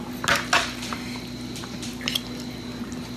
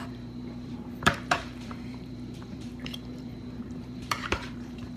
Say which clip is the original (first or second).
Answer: first